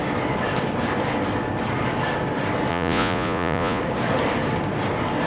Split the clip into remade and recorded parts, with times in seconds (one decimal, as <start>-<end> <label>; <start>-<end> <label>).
0.0-2.7 recorded; 2.7-3.8 remade; 3.8-5.3 recorded